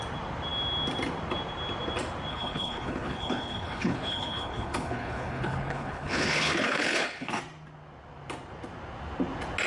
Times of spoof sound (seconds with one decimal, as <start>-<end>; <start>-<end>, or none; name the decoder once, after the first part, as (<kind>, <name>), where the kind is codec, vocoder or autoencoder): 2.3-7.4 (codec, HILCodec)